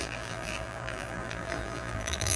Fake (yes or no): yes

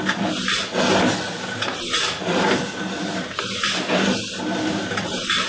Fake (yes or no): no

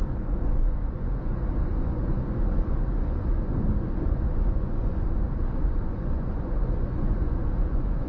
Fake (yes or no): yes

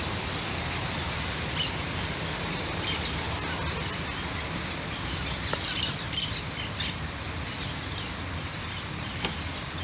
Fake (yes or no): no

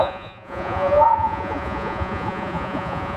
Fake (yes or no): yes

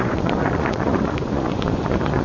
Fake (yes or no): yes